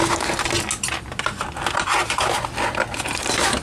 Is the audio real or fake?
real